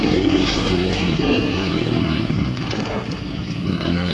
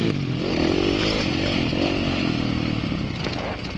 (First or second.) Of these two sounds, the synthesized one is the first